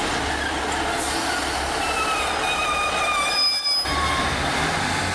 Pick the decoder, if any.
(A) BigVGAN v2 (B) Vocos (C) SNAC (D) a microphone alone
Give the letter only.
D